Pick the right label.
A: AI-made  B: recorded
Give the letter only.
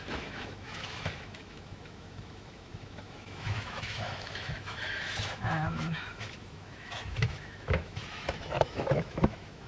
A